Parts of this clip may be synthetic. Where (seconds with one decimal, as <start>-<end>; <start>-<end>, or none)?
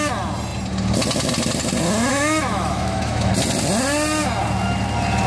2.1-3.3